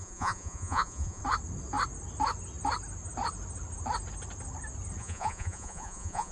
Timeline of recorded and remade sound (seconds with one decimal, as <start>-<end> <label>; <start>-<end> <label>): 0.0-1.2 remade; 1.2-5.0 recorded; 5.0-6.3 remade